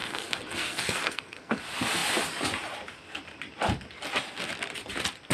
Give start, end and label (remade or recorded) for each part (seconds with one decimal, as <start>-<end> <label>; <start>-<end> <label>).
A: 0.0-1.6 remade; 1.6-5.3 recorded